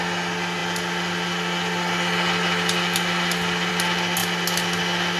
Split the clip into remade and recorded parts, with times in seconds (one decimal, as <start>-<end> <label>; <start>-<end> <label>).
0.0-5.2 recorded